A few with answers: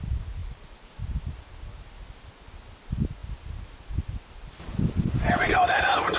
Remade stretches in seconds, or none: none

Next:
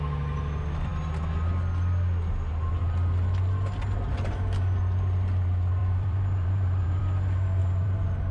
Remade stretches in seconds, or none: 5.8-7.0 (vocoder, BigVGAN v2); 7.6-8.3

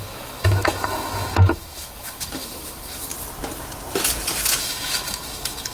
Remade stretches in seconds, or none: 0.0-3.1 (autoencoder, DAC-VAE); 4.6-5.7

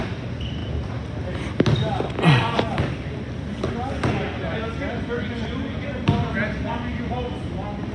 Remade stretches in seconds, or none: none

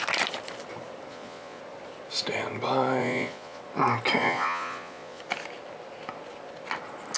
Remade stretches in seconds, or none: 1.1-1.6 (vocoder, Vocos); 3.0-3.6; 4.2-5.2

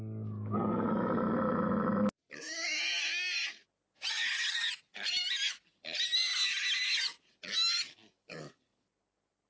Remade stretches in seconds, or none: none

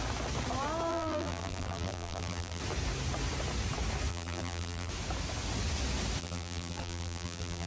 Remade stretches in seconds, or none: 0.9-2.6 (vocoder, BigVGAN v2); 4.1-4.9; 6.2-7.7

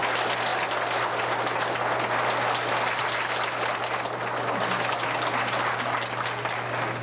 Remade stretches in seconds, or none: none